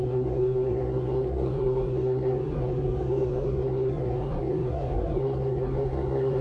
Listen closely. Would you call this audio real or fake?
fake